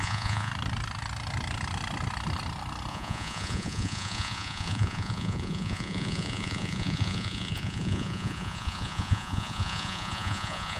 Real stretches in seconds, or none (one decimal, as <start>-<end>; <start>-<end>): 0.5-2.9